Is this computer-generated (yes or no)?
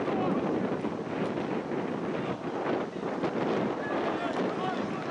no